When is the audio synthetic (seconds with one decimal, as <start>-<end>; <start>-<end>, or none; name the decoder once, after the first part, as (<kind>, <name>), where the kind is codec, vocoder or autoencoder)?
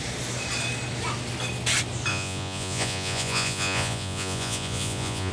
2.1-5.3 (vocoder, Vocos)